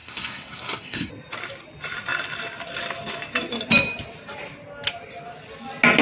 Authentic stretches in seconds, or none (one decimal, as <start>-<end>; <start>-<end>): 1.1-6.0